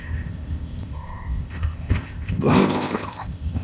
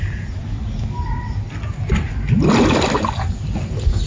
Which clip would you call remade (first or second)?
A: first